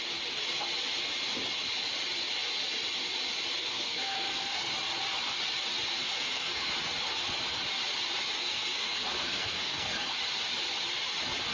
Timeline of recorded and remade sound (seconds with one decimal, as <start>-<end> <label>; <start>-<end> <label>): 0.0-3.6 recorded; 3.6-4.7 remade; 4.7-6.0 recorded; 6.0-6.7 remade; 6.7-8.4 recorded; 8.4-10.2 remade; 10.2-11.5 recorded